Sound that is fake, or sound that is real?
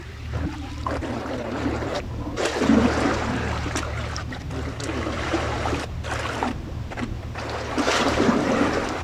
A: fake